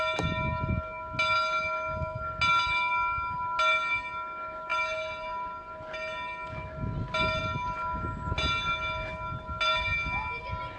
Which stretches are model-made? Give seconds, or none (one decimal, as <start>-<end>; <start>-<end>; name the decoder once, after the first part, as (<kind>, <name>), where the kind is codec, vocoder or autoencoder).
none